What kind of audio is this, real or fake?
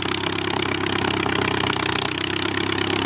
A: real